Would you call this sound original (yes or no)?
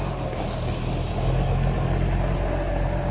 yes